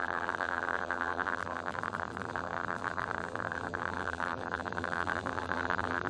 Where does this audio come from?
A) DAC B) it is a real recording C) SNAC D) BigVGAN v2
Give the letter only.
D